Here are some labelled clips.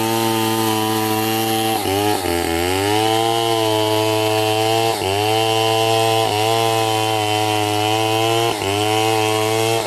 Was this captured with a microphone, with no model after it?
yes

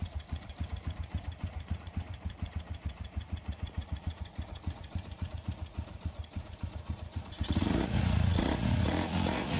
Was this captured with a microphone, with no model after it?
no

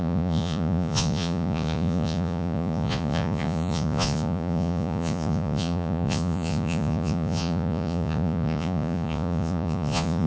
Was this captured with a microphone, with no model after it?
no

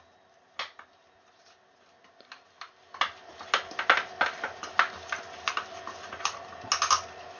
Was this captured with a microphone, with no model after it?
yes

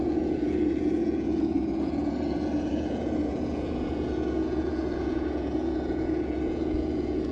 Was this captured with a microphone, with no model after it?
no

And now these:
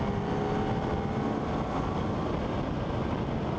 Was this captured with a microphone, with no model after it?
yes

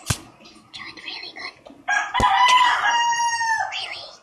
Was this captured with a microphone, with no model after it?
yes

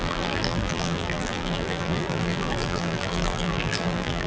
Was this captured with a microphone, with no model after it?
no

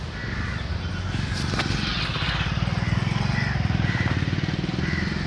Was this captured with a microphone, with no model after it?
yes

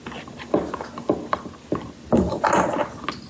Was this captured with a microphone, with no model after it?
yes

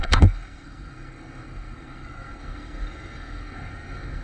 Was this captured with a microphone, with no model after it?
no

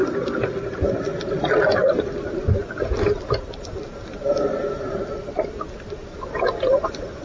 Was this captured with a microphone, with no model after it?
yes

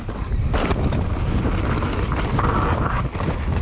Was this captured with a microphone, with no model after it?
yes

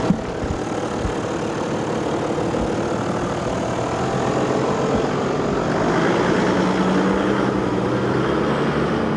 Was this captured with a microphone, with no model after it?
yes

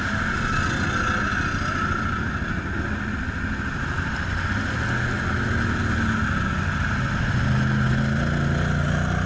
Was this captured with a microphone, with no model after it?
yes